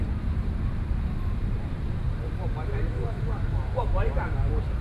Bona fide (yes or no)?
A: no